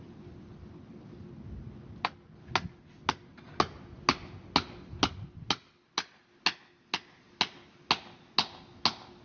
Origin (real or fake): real